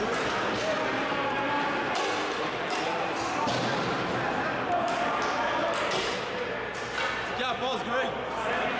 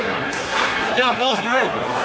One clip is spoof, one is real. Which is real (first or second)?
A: first